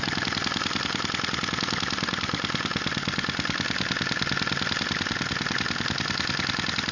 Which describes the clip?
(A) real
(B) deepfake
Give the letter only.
A